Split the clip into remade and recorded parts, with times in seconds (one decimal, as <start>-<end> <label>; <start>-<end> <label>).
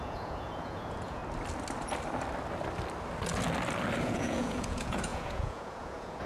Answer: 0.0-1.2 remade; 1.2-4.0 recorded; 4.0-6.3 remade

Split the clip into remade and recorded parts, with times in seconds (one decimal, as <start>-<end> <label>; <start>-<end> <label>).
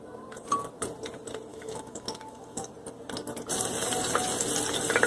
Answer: 0.0-1.5 recorded; 1.5-2.7 remade; 2.7-5.1 recorded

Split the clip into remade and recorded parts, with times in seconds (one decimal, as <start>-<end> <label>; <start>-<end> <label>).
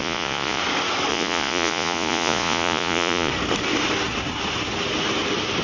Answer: 0.0-0.6 remade; 0.6-1.1 recorded; 1.1-3.3 remade; 3.3-5.6 recorded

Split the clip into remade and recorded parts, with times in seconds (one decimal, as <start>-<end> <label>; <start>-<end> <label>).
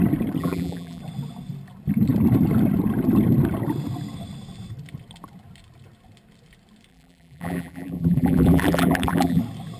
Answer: 0.0-0.4 recorded; 0.4-1.0 remade; 1.0-6.9 recorded; 6.9-9.4 remade; 9.4-9.8 recorded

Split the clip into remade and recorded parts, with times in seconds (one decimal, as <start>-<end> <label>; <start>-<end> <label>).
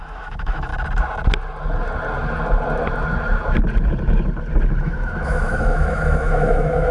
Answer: 0.0-0.7 remade; 0.7-4.8 recorded; 4.8-6.9 remade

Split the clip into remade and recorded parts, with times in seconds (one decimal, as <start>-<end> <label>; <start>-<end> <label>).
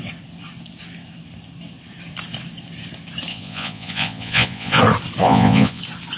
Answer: 0.0-3.3 recorded; 3.3-4.8 remade; 4.8-5.2 recorded; 5.2-5.8 remade; 5.8-6.2 recorded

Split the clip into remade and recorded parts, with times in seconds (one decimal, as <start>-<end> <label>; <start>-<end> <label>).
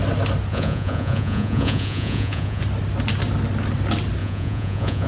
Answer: 0.0-0.5 recorded; 0.5-2.6 remade; 2.6-4.2 recorded; 4.2-5.1 remade